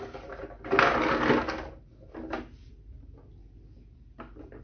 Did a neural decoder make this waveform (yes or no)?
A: no